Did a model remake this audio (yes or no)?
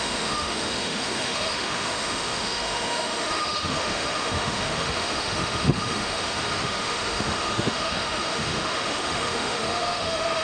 yes